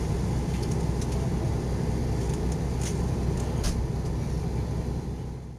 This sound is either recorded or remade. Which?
recorded